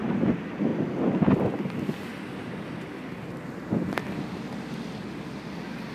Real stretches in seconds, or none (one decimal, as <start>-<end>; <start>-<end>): 0.0-5.9